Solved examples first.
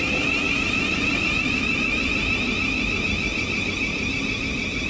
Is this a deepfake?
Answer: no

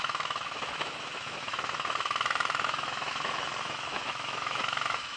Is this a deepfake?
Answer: yes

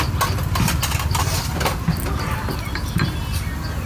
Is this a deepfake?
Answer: no